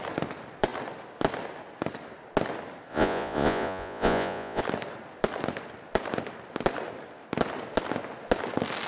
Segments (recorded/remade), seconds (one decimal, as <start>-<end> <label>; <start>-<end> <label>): 0.0-2.9 recorded; 2.9-4.6 remade; 4.6-8.9 recorded